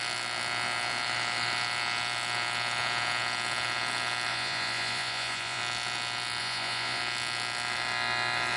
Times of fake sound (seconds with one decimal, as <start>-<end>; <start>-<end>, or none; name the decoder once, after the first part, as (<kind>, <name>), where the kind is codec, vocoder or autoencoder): 4.3-5.6 (vocoder, Vocos); 6.4-7.0